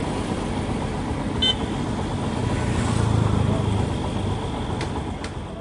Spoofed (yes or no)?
no